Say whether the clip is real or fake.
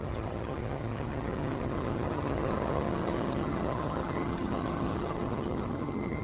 fake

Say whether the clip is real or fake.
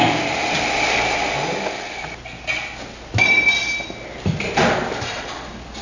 real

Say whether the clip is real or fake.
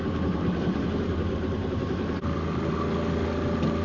real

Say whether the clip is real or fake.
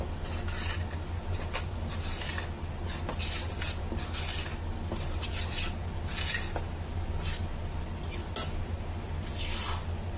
real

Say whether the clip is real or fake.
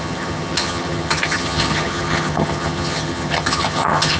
fake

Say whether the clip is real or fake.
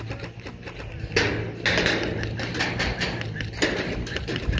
real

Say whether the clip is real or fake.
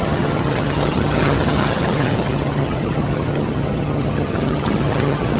fake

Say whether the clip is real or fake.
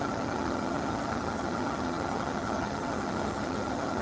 fake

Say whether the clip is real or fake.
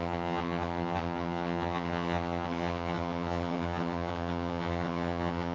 fake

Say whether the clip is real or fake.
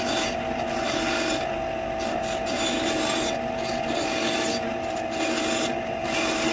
real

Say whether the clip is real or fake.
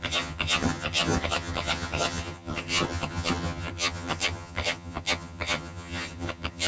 fake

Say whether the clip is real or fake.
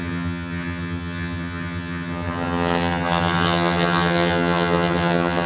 fake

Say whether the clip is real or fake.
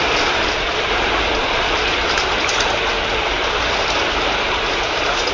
real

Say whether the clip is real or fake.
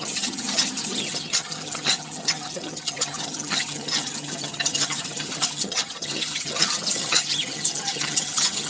fake